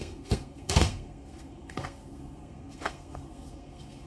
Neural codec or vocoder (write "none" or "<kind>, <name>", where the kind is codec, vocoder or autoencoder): codec, SNAC